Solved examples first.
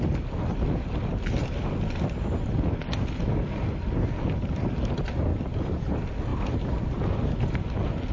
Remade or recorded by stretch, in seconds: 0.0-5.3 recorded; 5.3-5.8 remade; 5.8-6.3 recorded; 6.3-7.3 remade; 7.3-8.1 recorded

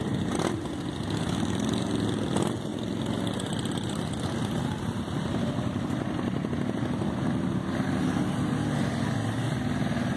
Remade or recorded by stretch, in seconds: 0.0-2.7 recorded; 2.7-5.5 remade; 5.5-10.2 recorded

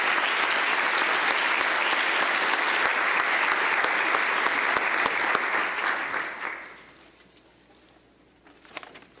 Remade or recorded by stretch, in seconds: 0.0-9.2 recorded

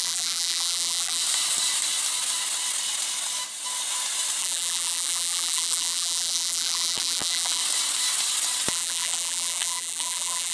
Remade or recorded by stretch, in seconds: 0.0-1.2 remade; 1.2-4.4 recorded; 4.4-7.6 remade; 7.6-8.7 recorded; 8.7-10.5 remade

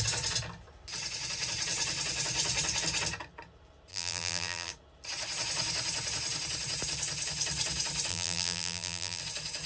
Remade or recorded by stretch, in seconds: 0.0-3.9 recorded; 3.9-4.7 remade; 4.7-8.1 recorded; 8.1-9.2 remade; 9.2-9.7 recorded

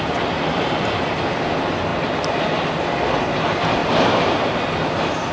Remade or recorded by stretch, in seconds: 0.0-1.9 recorded; 1.9-2.4 remade; 2.4-3.8 recorded; 3.8-4.6 remade; 4.6-5.3 recorded